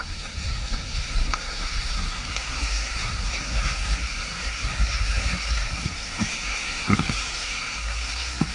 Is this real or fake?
fake